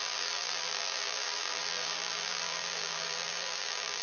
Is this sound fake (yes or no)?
yes